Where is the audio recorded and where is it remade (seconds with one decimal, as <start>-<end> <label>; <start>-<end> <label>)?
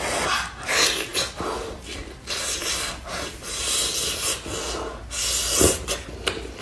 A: 0.0-6.6 recorded